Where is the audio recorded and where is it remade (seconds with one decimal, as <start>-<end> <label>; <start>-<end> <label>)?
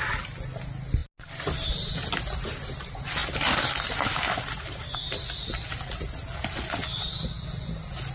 0.0-8.1 recorded